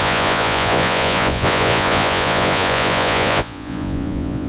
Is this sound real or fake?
fake